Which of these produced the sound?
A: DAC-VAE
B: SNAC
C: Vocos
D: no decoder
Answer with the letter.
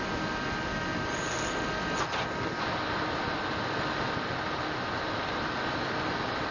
D